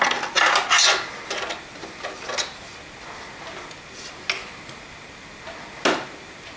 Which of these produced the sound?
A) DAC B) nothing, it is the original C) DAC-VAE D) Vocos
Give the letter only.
B